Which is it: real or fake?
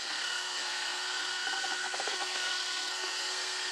fake